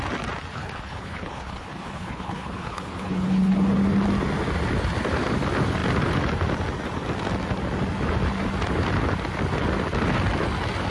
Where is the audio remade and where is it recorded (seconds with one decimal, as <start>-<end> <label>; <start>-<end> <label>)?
0.0-0.5 recorded; 0.5-3.5 remade; 3.5-10.9 recorded